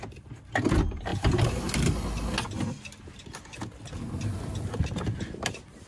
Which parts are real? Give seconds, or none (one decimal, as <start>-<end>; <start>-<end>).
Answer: 0.0-5.9